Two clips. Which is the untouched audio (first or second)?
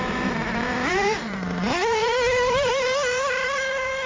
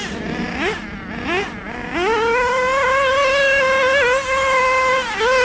second